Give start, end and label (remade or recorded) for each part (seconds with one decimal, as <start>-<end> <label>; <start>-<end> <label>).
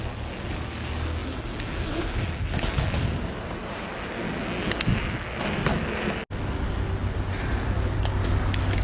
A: 0.0-8.8 recorded